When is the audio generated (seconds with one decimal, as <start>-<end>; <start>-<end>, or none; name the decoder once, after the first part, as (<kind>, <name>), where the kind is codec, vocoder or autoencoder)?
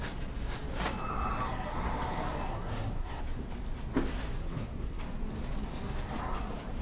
2.5-3.2 (codec, SNAC); 4.4-5.0